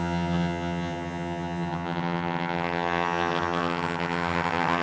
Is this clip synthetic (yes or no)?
yes